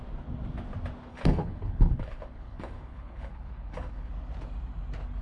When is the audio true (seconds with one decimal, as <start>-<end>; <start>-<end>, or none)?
0.0-1.1; 4.1-5.2